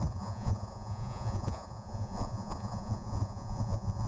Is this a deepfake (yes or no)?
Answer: yes